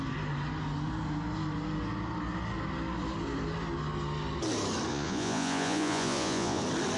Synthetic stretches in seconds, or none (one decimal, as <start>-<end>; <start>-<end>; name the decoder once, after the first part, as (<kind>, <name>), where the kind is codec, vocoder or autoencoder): 4.9-6.6 (vocoder, Vocos)